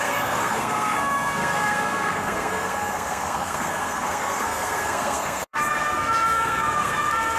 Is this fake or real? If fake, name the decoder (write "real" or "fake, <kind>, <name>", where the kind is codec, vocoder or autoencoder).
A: fake, codec, SNAC